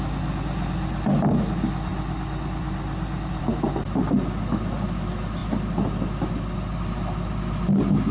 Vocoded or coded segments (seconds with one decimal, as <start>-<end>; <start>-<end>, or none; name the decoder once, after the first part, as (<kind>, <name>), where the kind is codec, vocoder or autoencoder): none